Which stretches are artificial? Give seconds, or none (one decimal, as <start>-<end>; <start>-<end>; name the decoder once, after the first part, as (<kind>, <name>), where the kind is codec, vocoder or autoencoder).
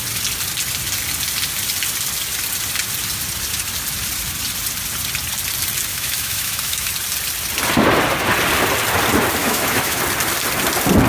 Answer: 5.9-6.9 (autoencoder, DAC-VAE); 9.4-10.0